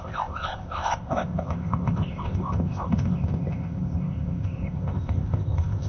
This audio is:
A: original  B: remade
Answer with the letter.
B